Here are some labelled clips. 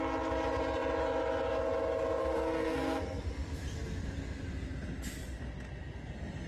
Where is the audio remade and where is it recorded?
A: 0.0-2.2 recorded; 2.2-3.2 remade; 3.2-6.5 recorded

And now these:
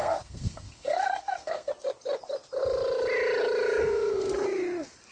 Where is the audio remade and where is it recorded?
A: 0.0-1.7 remade; 1.7-3.8 recorded; 3.8-4.3 remade; 4.3-5.1 recorded

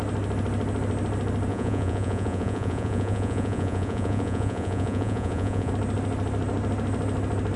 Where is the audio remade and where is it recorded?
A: 0.0-1.5 recorded; 1.5-5.7 remade; 5.7-7.6 recorded

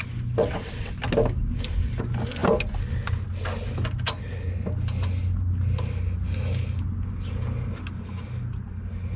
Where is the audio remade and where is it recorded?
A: 0.0-0.4 recorded; 0.4-0.9 remade; 0.9-9.2 recorded